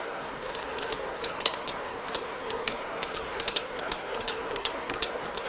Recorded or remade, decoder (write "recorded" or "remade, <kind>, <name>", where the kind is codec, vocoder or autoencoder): remade, codec, SNAC